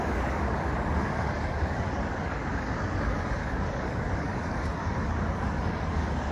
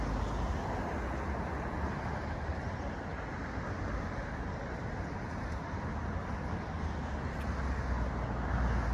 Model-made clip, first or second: first